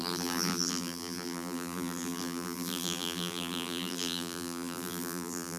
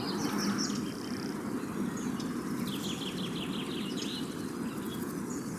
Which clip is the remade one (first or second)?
first